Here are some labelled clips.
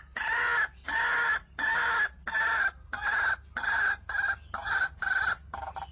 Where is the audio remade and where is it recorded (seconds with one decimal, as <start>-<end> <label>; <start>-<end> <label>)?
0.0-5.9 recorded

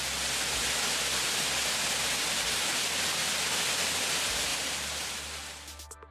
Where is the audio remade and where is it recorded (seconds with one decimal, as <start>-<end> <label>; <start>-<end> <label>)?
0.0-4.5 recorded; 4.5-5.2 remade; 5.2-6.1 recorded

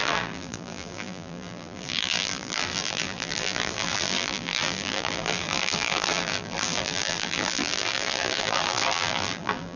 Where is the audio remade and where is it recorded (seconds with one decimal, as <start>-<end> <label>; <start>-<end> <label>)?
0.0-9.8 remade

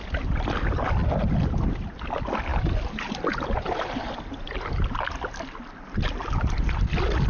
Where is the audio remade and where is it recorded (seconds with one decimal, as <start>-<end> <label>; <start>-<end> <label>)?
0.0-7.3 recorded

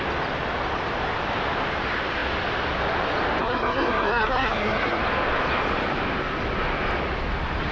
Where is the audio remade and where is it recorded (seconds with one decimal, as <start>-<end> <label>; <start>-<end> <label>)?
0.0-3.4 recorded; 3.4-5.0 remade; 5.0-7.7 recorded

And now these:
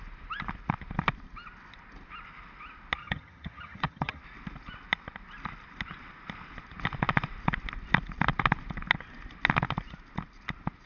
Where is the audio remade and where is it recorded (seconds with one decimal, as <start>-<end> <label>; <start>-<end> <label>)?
0.0-3.0 recorded; 3.0-4.2 remade; 4.2-10.9 recorded

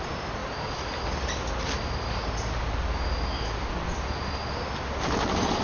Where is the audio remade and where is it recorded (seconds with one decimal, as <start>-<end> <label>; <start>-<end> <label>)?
0.0-5.6 recorded